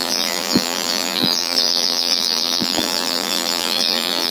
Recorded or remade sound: remade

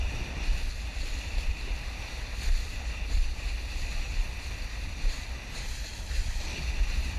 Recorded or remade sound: recorded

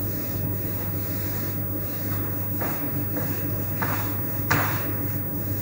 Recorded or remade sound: recorded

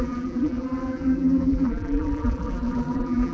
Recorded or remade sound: remade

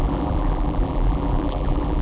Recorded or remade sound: remade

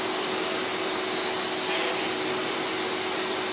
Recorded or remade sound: recorded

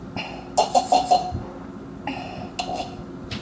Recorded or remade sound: recorded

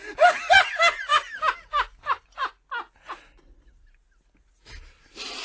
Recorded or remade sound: recorded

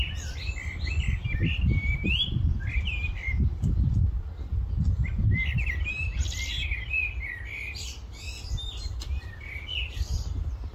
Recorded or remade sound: remade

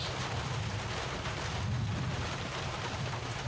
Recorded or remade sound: recorded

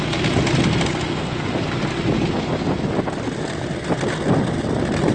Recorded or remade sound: recorded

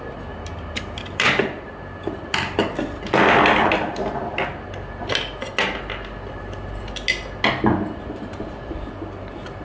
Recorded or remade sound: recorded